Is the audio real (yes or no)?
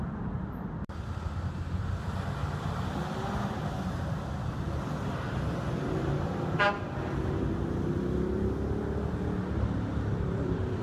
yes